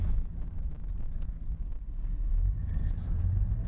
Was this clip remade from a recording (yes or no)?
yes